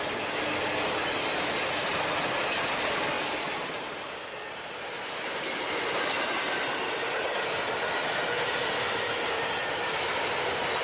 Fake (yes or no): no